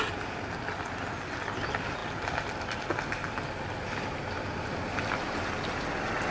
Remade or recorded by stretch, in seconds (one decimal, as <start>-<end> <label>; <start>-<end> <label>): 0.0-6.3 recorded